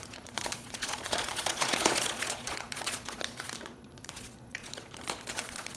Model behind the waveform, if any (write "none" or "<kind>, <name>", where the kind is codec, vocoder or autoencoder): vocoder, Vocos